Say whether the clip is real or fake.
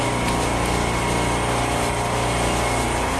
real